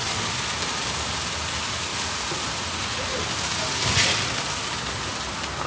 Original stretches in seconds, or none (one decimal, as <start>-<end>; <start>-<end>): 0.0-5.7